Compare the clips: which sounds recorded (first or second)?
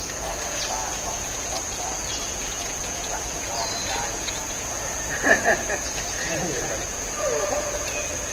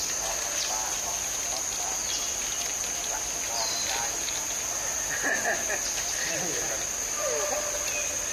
second